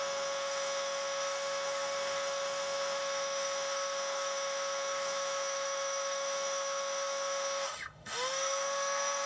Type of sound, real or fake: fake